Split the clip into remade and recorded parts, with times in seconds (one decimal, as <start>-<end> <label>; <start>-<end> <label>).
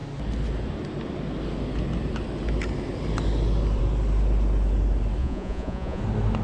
0.0-5.2 recorded; 5.2-6.0 remade; 6.0-6.4 recorded